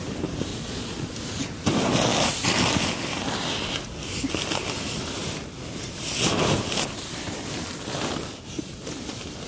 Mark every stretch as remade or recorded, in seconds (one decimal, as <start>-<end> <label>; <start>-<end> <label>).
0.0-0.5 recorded; 0.5-1.1 remade; 1.1-9.5 recorded